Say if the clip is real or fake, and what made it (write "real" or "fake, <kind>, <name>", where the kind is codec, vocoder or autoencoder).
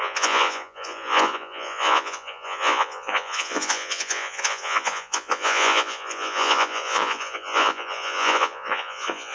fake, vocoder, Vocos